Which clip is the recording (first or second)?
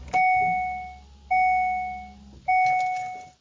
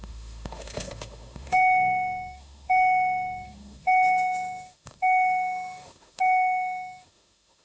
first